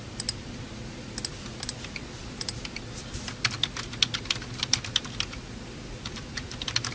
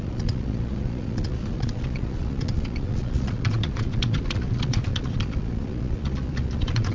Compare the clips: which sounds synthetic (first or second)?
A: second